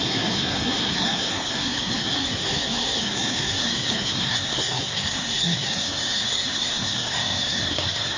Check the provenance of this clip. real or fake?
fake